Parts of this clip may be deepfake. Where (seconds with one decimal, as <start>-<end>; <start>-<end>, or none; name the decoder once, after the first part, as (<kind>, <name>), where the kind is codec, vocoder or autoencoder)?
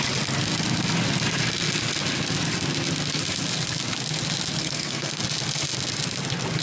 4.6-5.2 (codec, SNAC)